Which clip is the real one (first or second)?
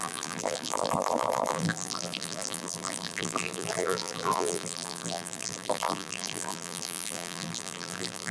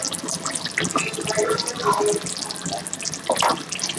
second